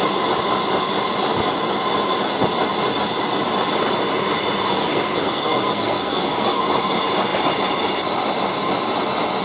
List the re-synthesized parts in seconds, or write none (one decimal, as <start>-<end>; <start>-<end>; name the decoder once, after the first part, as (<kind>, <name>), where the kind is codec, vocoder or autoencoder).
4.9-6.6 (codec, SNAC)